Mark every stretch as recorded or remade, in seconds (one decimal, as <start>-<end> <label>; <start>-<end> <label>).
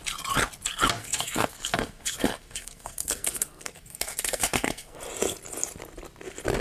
0.0-1.0 recorded; 1.0-5.0 remade; 5.0-6.6 recorded